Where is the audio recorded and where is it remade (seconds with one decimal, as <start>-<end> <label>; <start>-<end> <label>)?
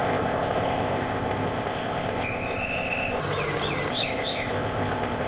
0.0-3.2 remade; 3.2-3.9 recorded; 3.9-5.3 remade